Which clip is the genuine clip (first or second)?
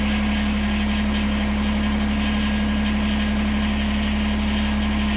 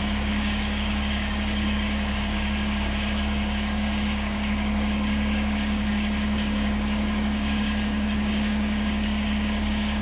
first